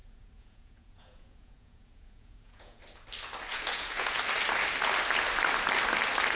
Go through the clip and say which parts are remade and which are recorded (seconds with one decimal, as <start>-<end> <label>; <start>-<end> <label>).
0.0-2.8 remade; 2.8-3.5 recorded; 3.5-4.2 remade; 4.2-6.4 recorded